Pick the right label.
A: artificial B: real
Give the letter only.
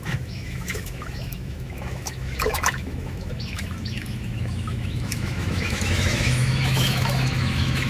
A